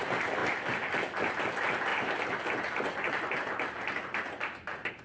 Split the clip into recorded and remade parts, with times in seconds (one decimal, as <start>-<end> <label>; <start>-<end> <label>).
0.0-5.0 recorded